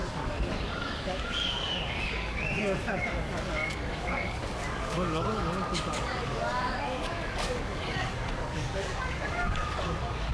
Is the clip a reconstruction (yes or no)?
yes